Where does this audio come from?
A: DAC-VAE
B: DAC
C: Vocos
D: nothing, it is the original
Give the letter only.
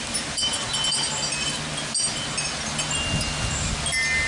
D